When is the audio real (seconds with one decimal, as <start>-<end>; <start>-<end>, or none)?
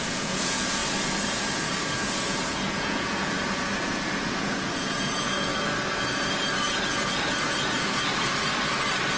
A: 0.8-2.0; 5.5-6.8; 8.1-9.2